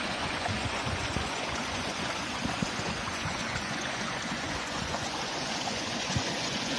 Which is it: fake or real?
fake